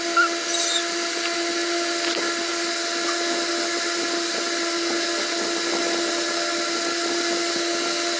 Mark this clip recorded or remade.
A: recorded